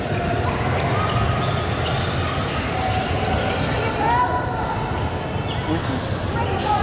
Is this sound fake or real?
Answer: real